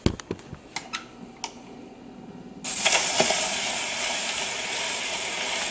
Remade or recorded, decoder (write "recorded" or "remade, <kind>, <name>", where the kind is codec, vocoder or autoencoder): recorded